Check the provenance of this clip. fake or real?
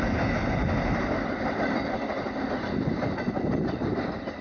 real